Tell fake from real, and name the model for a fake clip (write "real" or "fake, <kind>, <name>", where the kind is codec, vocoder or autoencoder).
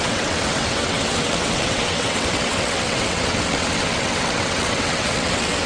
fake, vocoder, WaveNeXt